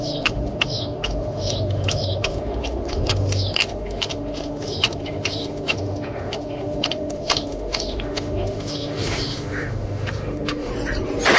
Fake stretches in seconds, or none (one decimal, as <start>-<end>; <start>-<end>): 0.0-10.7